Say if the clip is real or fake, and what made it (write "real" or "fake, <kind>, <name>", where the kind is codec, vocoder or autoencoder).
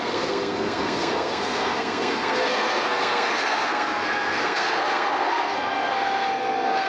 fake, codec, SNAC